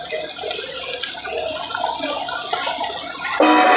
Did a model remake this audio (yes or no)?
no